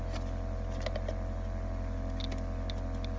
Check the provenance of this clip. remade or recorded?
recorded